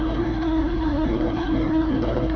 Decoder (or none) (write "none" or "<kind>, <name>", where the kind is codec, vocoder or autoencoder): codec, SNAC